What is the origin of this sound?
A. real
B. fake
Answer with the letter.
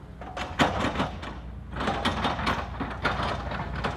A